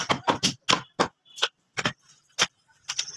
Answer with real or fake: real